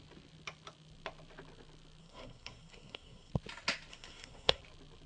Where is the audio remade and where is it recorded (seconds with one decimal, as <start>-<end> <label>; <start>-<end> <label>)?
0.0-2.0 recorded; 2.0-3.3 remade; 3.3-3.9 recorded; 3.9-4.6 remade; 4.6-5.1 recorded